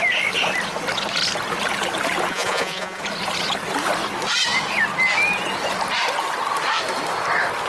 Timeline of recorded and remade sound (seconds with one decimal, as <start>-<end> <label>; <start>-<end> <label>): 0.0-2.3 recorded; 2.3-3.0 remade; 3.0-7.7 recorded